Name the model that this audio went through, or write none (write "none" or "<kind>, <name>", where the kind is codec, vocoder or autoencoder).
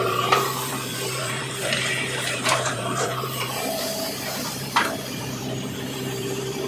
vocoder, BigVGAN v2